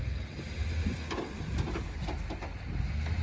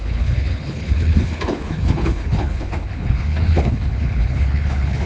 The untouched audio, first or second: first